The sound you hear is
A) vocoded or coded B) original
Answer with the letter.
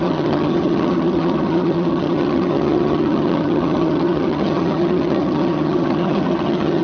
A